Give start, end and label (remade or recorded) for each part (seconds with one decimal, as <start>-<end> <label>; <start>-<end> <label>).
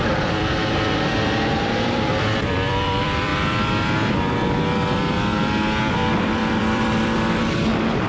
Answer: 0.0-3.3 remade; 3.3-4.5 recorded; 4.5-5.3 remade; 5.3-5.8 recorded; 5.8-8.1 remade